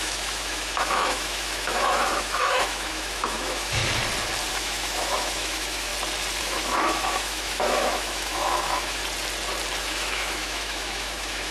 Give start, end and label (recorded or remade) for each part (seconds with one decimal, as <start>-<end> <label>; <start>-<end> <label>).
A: 0.0-3.8 remade; 3.8-4.5 recorded; 4.5-5.9 remade; 5.9-6.4 recorded; 6.4-9.0 remade; 9.0-9.8 recorded; 9.8-11.5 remade